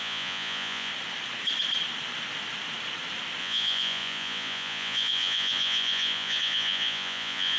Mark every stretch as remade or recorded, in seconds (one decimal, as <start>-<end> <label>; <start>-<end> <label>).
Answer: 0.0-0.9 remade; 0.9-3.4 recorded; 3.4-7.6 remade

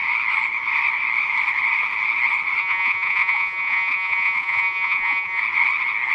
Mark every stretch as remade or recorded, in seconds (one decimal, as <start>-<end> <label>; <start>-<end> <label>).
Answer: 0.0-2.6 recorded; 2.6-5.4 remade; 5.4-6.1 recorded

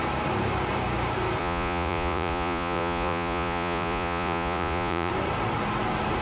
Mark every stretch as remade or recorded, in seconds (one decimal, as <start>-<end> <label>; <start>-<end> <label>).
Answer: 0.0-1.4 recorded; 1.4-5.1 remade; 5.1-6.2 recorded

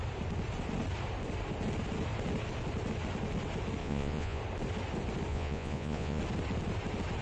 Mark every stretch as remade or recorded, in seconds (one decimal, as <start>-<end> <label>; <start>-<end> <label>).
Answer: 0.0-3.8 recorded; 3.8-4.4 remade; 4.4-5.3 recorded; 5.3-6.2 remade; 6.2-7.2 recorded

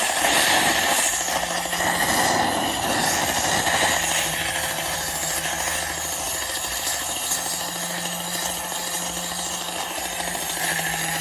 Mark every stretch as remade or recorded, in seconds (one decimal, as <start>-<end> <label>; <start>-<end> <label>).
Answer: 0.0-11.2 recorded

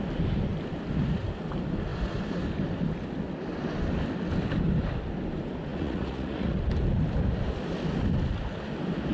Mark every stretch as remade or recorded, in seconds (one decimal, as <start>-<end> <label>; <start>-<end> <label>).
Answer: 0.0-5.7 recorded; 5.7-6.6 remade; 6.6-9.1 recorded